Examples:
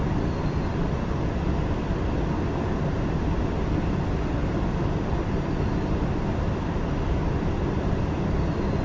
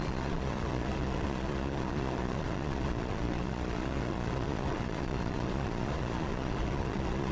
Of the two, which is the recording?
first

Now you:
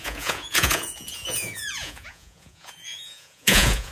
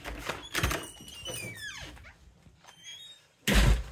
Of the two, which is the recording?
second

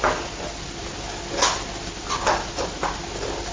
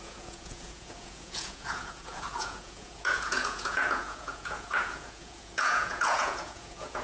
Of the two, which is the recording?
first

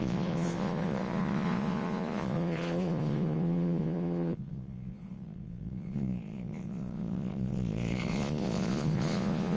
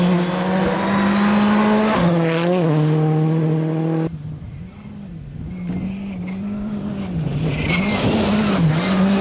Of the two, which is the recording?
second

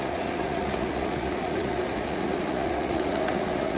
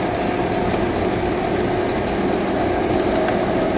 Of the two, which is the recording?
second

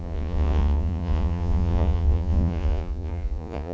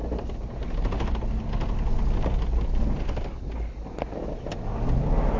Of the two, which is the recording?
second